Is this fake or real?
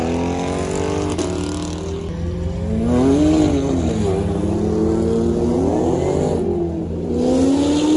real